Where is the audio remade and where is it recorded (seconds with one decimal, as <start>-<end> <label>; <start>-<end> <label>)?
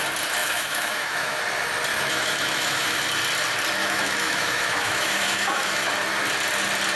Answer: 0.0-0.4 recorded; 0.4-1.4 remade; 1.4-1.9 recorded; 1.9-3.0 remade; 3.0-3.8 recorded; 3.8-5.9 remade; 5.9-7.0 recorded